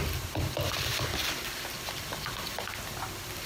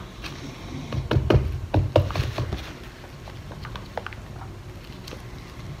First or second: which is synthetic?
first